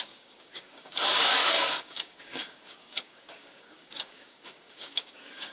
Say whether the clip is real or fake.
fake